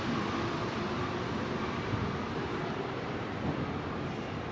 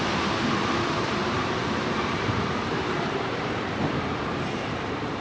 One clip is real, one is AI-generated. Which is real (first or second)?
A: first